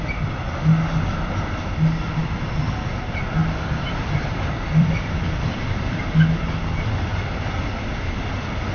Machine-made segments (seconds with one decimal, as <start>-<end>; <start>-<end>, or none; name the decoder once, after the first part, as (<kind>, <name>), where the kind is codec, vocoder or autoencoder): 3.4-6.0 (vocoder, BigVGAN v2); 7.1-7.8

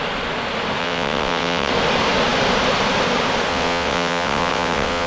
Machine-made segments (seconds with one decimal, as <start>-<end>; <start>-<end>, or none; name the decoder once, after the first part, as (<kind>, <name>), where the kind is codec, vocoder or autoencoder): 0.8-1.7 (vocoder, WaveNeXt); 3.5-5.1

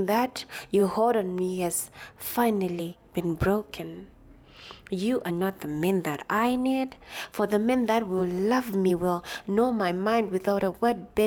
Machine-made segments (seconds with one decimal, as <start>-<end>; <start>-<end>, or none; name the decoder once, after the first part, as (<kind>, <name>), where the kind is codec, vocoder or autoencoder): 0.0-0.8 (codec, DAC); 2.8-4.4; 5.3-8.2; 8.9-11.3

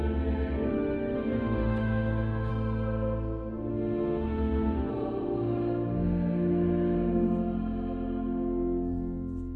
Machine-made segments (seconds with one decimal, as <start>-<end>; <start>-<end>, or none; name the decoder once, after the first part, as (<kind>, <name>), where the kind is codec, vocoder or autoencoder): 0.7-2.5 (autoencoder, DAC-VAE); 3.7-4.9